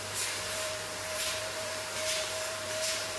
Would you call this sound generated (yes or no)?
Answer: yes